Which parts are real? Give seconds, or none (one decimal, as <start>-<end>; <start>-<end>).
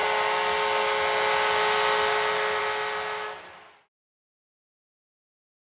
0.0-5.7